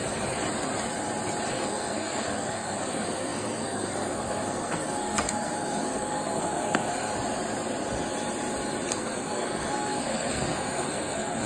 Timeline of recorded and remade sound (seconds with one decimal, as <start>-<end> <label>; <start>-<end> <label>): 0.0-1.5 recorded; 1.5-7.1 remade; 7.1-8.9 recorded; 8.9-11.5 remade